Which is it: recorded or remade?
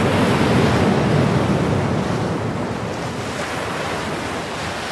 recorded